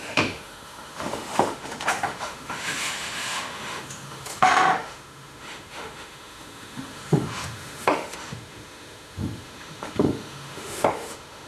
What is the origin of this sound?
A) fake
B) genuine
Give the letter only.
A